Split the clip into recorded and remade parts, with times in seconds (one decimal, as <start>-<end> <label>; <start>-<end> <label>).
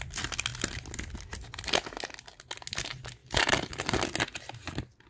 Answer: 0.0-3.2 recorded; 3.2-4.0 remade; 4.0-5.1 recorded